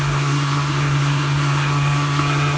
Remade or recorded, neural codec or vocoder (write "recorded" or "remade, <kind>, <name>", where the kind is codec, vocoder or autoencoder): remade, codec, SNAC